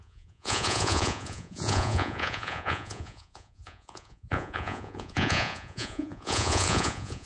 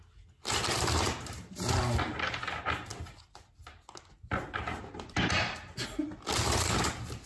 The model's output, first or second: first